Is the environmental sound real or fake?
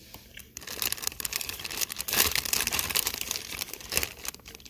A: fake